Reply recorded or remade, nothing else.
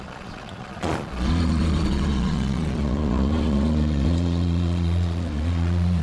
remade